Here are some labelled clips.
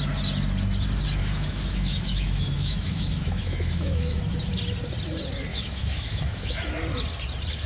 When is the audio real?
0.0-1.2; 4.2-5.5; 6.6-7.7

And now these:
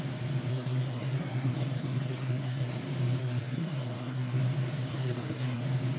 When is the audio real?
0.0-0.5; 2.8-3.2; 4.4-4.9; 5.6-6.0

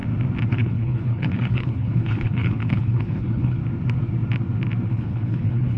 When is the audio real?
0.0-0.5; 3.6-4.9

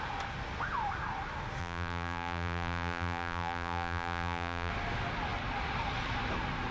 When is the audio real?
0.0-1.6; 4.7-6.7

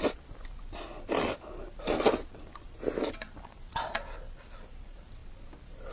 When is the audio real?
0.9-4.4